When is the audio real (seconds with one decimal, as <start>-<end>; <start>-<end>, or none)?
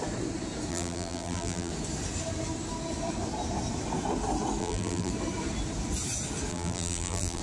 0.0-0.7; 1.7-4.6; 5.1-6.5